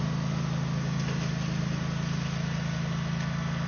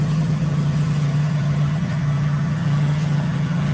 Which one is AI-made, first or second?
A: second